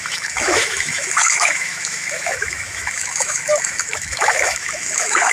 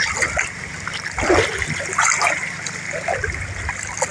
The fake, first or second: first